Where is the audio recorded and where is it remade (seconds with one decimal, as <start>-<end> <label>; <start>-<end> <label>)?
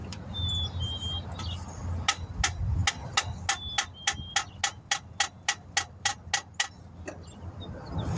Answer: 0.0-8.2 recorded